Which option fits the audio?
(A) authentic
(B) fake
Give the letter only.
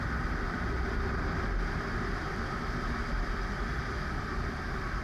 A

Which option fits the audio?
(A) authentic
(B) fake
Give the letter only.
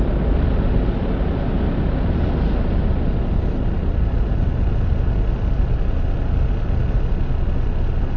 A